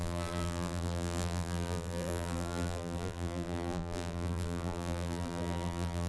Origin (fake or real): fake